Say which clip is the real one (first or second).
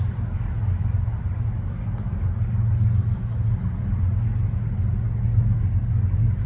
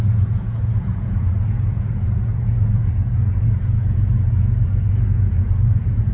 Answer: first